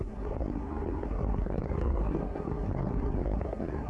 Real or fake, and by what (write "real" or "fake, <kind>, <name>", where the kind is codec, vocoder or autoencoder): fake, codec, SNAC